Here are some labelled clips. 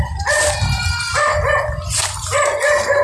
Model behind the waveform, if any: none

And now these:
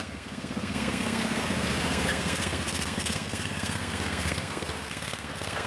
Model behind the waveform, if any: codec, SNAC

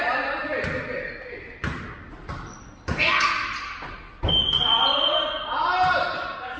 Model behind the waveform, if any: none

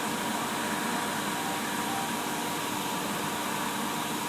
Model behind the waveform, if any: none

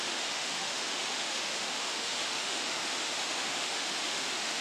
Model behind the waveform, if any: autoencoder, DAC-VAE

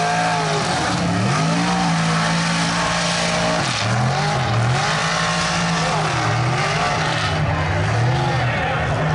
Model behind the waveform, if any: none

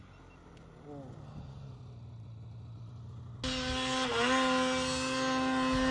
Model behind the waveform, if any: none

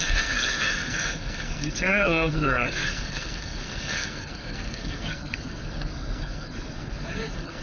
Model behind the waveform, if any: codec, SNAC